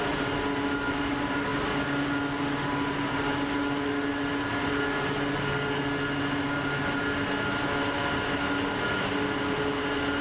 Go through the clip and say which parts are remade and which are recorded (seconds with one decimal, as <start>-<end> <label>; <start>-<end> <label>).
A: 0.0-10.2 recorded